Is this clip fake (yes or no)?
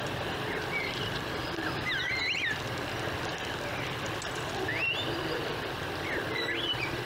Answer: no